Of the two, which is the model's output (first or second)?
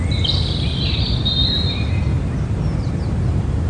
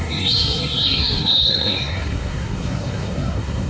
second